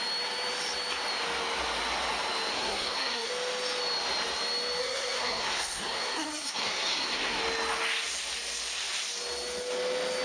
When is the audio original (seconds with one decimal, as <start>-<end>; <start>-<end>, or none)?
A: 0.0-2.5; 3.3-4.8; 7.4-10.2